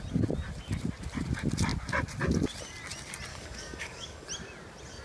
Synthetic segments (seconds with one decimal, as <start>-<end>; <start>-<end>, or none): 3.3-4.3